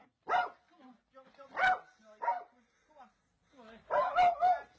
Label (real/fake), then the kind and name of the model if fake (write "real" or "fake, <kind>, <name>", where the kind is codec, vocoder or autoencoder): real